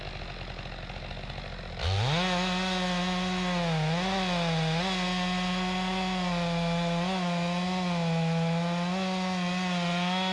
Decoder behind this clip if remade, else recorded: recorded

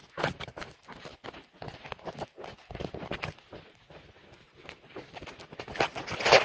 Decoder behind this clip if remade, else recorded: recorded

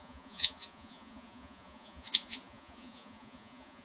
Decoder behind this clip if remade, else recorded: remade, vocoder, Vocos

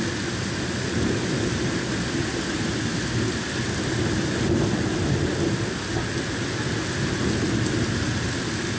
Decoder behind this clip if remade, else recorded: recorded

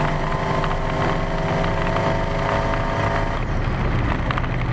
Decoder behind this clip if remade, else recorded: recorded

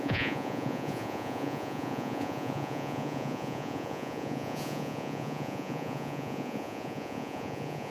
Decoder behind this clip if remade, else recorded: remade, vocoder, Vocos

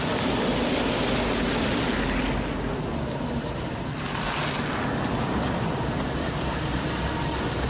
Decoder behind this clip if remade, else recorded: recorded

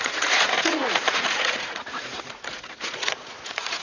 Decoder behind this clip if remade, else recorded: remade, vocoder, Vocos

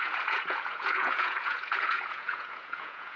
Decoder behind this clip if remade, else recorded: remade, vocoder, Vocos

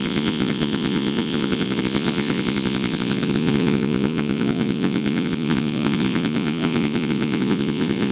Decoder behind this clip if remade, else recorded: remade, vocoder, Vocos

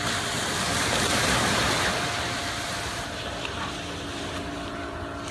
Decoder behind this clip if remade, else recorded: recorded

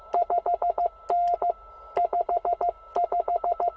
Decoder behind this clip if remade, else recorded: recorded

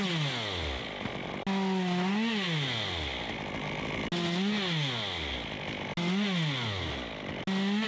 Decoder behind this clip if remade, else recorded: recorded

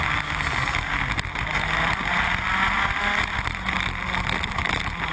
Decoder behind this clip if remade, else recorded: recorded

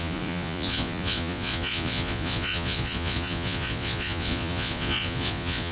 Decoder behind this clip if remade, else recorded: remade, vocoder, Vocos